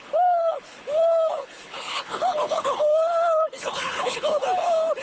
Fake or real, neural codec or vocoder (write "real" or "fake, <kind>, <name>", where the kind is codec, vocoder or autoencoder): fake, codec, HILCodec